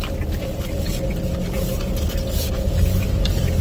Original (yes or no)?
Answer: yes